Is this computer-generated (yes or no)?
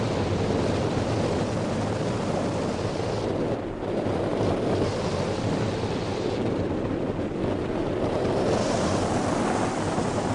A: no